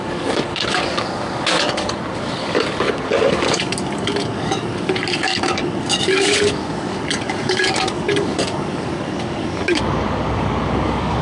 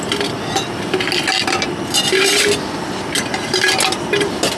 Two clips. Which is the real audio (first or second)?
second